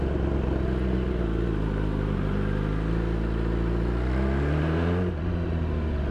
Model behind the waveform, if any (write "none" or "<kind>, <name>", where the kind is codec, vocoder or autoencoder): none